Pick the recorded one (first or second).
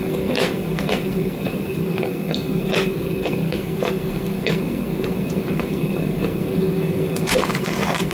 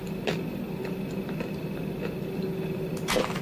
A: second